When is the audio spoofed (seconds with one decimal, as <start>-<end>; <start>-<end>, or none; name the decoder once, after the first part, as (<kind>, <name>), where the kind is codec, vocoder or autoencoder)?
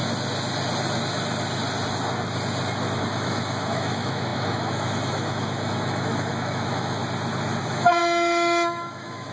3.0-7.0 (autoencoder, DAC-VAE); 7.6-9.3